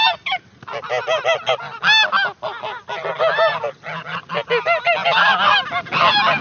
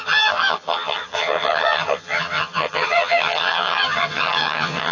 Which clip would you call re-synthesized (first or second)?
second